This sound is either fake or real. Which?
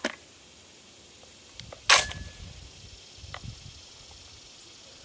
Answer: real